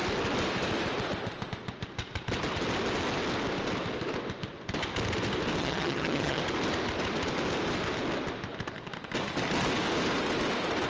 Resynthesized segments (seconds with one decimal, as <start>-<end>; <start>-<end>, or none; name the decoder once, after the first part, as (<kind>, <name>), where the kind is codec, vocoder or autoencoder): 5.6-6.4 (vocoder, HiFi-GAN)